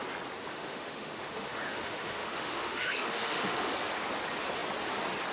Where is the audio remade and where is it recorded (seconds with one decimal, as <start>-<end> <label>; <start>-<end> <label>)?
0.0-0.5 recorded; 0.5-3.7 remade; 3.7-5.3 recorded

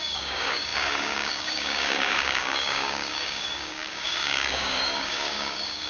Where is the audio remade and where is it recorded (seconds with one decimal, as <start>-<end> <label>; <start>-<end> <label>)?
0.0-5.9 remade

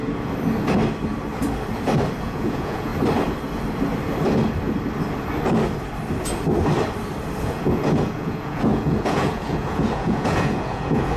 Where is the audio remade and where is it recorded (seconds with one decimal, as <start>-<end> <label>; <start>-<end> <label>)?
0.0-2.2 recorded; 2.2-2.9 remade; 2.9-7.4 recorded; 7.4-11.2 remade

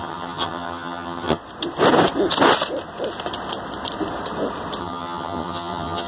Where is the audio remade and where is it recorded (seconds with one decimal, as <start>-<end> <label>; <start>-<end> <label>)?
0.0-1.4 remade; 1.4-4.8 recorded; 4.8-6.1 remade